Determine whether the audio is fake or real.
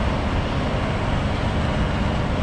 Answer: real